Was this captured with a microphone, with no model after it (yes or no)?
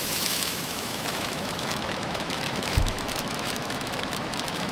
no